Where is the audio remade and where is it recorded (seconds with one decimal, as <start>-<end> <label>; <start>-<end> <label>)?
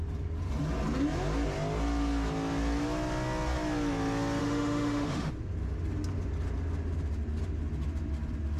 0.0-4.4 recorded; 4.4-5.3 remade; 5.3-8.6 recorded